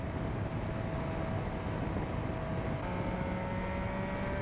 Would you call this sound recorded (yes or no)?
yes